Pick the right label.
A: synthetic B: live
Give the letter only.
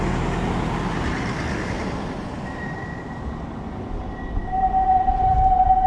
B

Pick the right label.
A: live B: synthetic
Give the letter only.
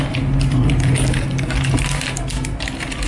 A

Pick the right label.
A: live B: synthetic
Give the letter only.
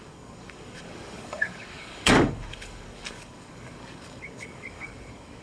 B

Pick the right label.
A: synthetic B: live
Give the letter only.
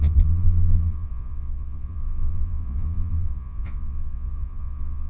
A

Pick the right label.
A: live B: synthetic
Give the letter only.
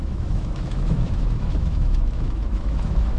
B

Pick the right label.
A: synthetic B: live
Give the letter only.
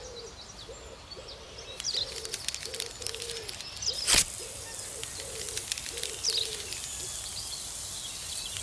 B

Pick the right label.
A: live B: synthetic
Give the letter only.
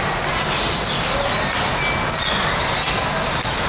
A